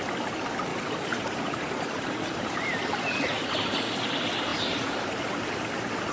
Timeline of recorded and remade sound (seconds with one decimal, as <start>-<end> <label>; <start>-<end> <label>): 0.0-0.7 recorded; 0.7-3.7 remade; 3.7-4.5 recorded; 4.5-5.6 remade; 5.6-6.1 recorded